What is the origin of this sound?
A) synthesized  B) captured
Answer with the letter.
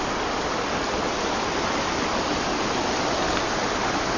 B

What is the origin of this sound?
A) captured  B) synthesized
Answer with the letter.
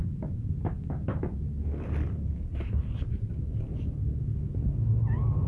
A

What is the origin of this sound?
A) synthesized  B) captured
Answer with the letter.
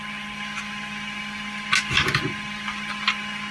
B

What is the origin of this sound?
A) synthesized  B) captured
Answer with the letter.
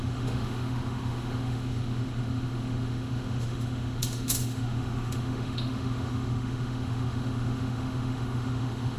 A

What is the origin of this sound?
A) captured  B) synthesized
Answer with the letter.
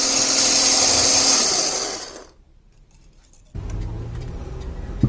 A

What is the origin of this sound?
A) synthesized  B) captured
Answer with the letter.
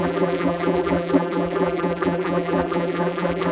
A